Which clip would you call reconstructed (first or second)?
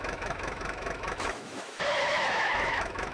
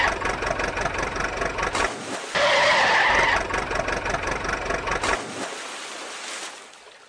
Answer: first